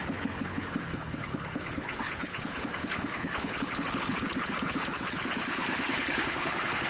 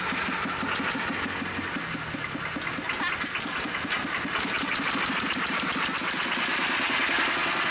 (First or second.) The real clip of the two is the second